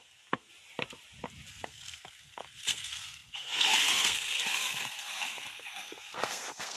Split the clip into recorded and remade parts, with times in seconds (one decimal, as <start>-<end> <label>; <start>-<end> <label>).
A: 0.0-0.5 remade; 0.5-1.5 recorded; 1.5-6.8 remade